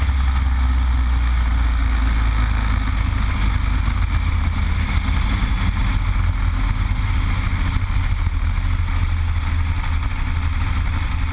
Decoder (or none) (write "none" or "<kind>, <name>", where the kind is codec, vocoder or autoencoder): none